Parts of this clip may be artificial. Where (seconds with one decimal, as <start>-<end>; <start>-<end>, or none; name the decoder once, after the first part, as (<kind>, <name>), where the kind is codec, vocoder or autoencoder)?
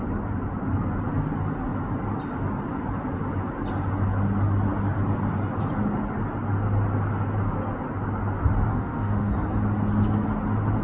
8.7-9.3 (autoencoder, DAC-VAE)